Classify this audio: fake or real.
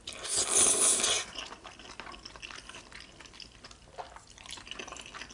real